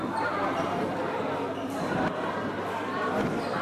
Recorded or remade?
recorded